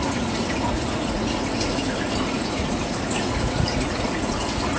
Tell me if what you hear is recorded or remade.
remade